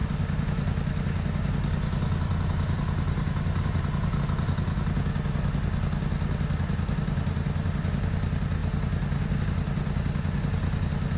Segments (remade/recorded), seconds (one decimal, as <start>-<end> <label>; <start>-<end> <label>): 0.0-11.2 recorded